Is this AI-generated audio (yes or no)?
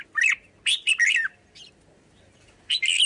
no